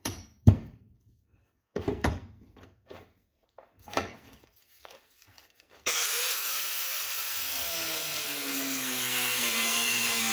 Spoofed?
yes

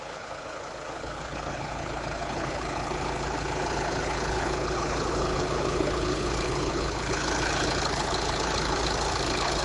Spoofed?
yes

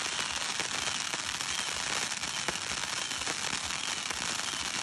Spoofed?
no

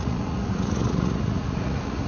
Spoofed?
yes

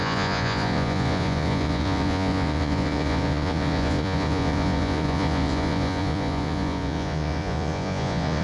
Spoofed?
yes